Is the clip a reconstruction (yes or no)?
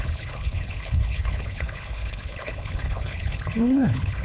yes